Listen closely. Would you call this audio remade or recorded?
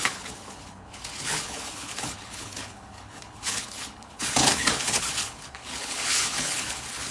remade